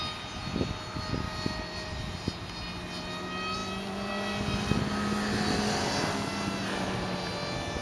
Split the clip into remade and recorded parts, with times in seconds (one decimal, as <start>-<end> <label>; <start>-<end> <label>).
0.0-7.8 recorded